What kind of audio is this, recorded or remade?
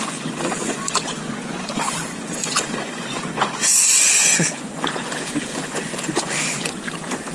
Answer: remade